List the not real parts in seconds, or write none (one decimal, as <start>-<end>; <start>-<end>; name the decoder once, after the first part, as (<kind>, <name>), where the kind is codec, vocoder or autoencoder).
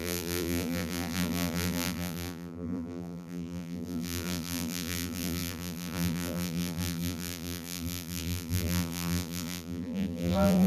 0.0-10.7 (vocoder, BigVGAN v2)